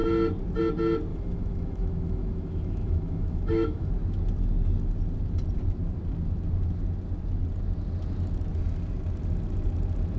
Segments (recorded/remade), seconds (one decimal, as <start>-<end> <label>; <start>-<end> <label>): 0.0-1.1 recorded; 1.1-3.9 remade; 3.9-10.2 recorded